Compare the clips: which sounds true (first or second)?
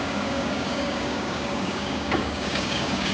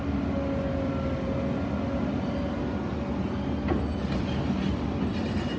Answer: second